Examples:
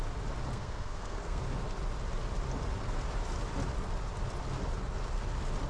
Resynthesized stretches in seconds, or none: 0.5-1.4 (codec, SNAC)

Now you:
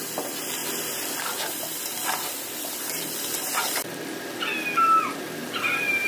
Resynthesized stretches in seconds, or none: 0.6-4.3 (vocoder, BigVGAN v2)

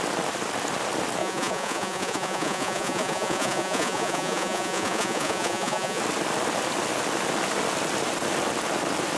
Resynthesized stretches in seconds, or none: 1.2-6.0 (vocoder, Vocos)

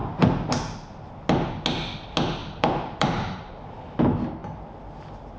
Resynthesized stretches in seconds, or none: 2.4-3.5 (vocoder, BigVGAN v2)

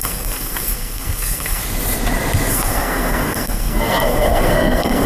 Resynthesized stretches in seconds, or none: 0.0-1.6 (codec, SNAC); 2.5-5.1